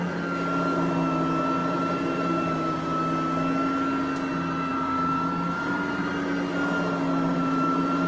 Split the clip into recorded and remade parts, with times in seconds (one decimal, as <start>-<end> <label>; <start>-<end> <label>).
0.0-1.6 recorded; 1.6-3.0 remade; 3.0-4.7 recorded; 4.7-6.1 remade; 6.1-7.3 recorded; 7.3-8.1 remade